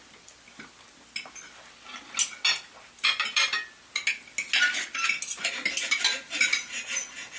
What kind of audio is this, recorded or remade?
recorded